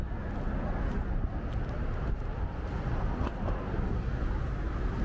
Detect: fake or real real